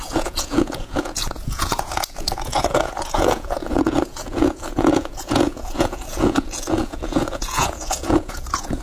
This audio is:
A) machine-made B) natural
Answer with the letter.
A